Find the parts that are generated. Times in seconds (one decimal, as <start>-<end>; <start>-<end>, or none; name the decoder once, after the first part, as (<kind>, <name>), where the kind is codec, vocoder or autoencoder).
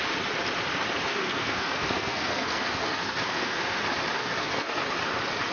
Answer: 1.1-3.8 (codec, SNAC); 4.2-4.8